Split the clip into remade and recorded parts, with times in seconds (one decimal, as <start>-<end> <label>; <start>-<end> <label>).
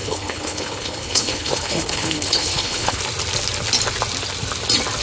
0.0-3.0 remade; 3.0-5.0 recorded